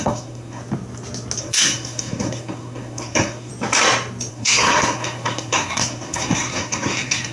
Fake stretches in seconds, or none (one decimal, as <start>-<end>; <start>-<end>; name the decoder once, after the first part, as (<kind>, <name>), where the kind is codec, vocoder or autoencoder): 0.0-0.6 (codec, SNAC); 1.4-3.5; 4.3-7.3